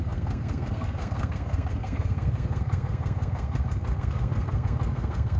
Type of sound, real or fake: fake